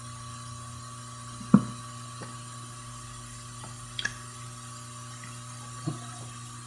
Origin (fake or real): real